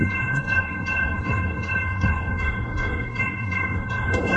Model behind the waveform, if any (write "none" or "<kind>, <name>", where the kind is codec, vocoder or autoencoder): codec, SNAC